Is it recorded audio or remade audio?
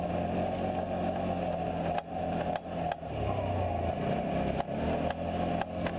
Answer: recorded